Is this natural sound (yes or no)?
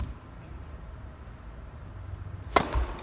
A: yes